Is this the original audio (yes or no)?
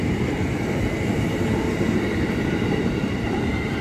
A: no